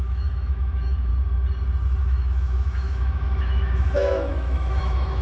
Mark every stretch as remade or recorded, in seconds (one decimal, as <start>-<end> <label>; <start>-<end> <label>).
0.0-1.1 remade; 1.1-2.0 recorded; 2.0-5.2 remade